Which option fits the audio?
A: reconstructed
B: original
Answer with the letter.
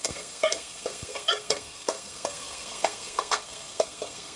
A